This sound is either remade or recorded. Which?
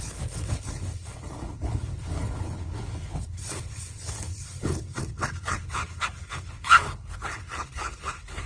remade